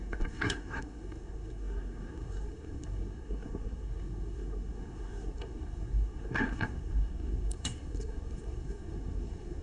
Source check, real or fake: fake